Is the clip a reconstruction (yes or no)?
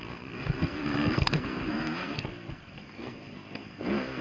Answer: yes